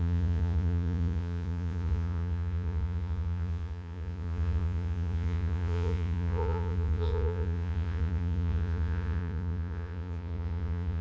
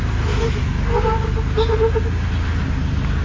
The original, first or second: second